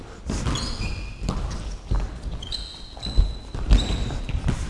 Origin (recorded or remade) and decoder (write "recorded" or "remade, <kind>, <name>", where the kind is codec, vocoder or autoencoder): recorded